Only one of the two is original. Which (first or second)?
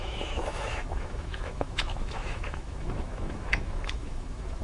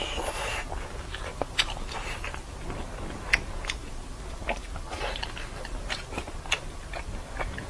second